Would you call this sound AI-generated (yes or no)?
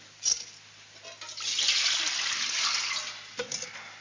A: no